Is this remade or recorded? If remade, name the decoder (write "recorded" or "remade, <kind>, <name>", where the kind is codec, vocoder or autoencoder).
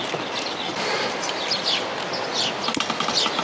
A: recorded